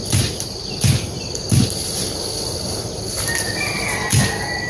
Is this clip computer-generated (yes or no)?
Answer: no